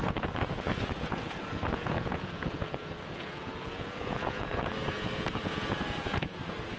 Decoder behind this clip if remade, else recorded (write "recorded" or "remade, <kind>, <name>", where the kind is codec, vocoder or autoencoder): remade, vocoder, Vocos